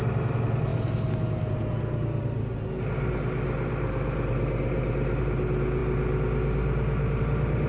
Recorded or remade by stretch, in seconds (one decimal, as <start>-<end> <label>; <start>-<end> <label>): 0.0-7.7 recorded